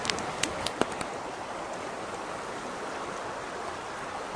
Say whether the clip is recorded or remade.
recorded